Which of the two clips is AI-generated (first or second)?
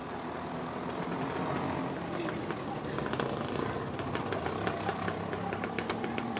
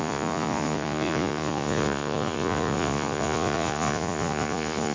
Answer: second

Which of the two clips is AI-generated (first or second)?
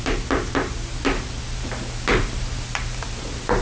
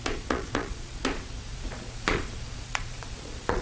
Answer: second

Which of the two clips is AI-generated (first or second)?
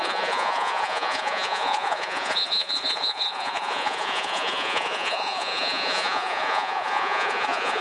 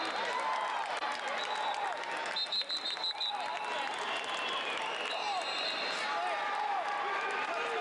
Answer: first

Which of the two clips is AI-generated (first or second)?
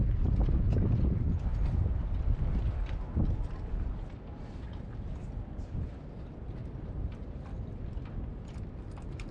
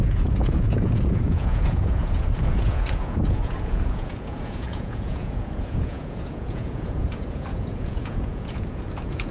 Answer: second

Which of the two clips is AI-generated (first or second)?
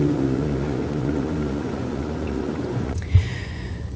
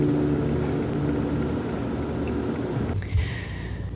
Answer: first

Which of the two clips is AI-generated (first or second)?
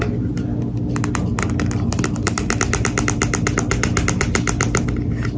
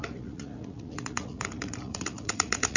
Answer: second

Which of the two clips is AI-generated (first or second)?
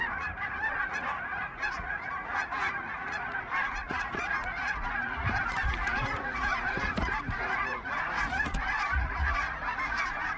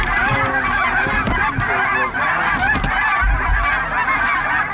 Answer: first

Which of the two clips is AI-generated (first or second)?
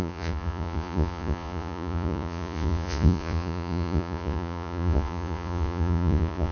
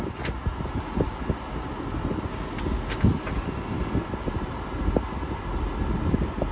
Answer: first